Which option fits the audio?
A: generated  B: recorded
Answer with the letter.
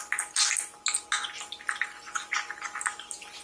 B